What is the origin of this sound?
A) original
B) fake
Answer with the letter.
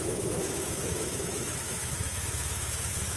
B